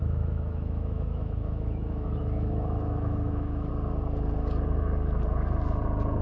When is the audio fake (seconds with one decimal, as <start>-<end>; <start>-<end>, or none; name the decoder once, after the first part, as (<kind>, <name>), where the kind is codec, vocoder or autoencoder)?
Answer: 0.0-3.7 (autoencoder, DAC-VAE)